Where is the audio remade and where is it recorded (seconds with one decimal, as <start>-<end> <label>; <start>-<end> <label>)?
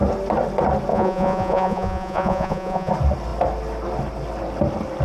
0.0-0.9 recorded; 0.9-2.9 remade; 2.9-5.0 recorded